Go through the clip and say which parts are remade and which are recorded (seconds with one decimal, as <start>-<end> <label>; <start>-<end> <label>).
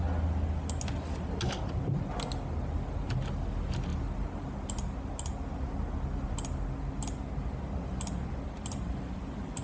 0.0-9.6 recorded